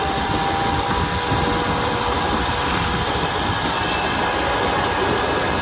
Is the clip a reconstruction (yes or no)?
no